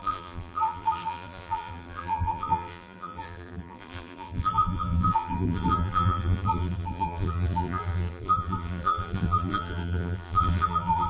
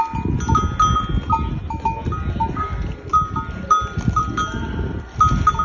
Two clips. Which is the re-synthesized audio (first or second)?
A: first